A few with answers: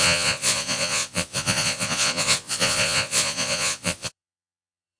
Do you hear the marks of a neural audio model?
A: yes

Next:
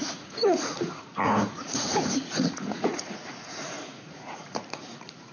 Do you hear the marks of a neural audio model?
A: yes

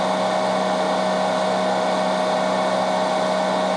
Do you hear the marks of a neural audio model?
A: no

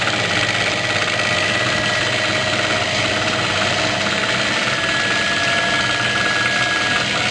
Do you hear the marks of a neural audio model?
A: no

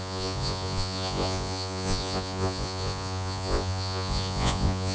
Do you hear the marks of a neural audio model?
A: yes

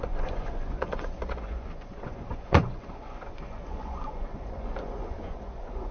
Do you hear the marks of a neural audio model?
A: yes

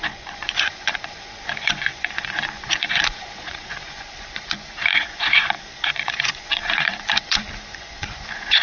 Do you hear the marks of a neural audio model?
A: yes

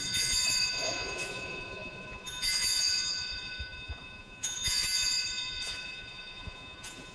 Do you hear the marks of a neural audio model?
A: yes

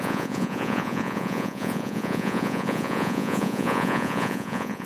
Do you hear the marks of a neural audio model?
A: yes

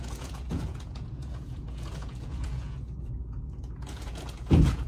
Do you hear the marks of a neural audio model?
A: yes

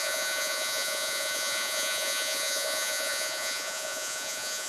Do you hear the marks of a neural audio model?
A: yes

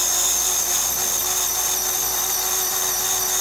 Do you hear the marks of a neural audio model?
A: no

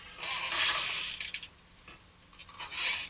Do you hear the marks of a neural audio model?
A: no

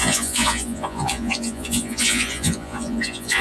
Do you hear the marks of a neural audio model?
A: yes